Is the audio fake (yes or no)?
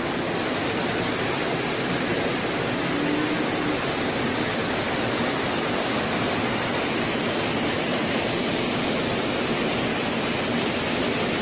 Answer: no